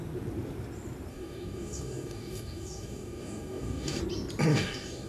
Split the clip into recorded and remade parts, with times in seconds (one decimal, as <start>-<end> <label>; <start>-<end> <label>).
0.0-1.1 recorded; 1.1-4.0 remade; 4.0-4.5 recorded; 4.5-5.1 remade